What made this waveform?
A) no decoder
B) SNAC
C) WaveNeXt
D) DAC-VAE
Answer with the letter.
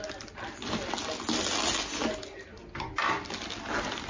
A